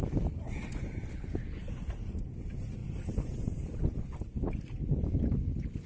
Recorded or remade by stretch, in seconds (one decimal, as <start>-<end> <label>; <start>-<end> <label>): 0.0-1.1 recorded; 1.1-1.6 remade; 1.6-5.9 recorded